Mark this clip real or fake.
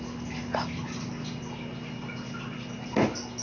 real